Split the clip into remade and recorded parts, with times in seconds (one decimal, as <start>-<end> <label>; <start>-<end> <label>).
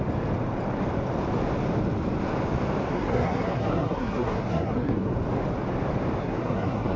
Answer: 0.0-2.9 recorded; 2.9-5.1 remade; 5.1-6.2 recorded; 6.2-7.0 remade